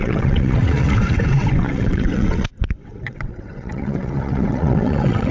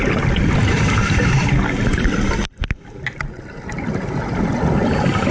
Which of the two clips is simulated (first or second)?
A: first